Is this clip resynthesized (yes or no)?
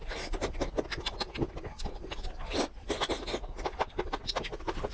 no